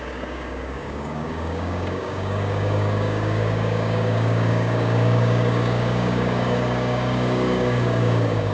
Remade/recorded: remade